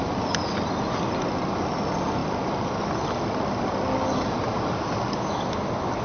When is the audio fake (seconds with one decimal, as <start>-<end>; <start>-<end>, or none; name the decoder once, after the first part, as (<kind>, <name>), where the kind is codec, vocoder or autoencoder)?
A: none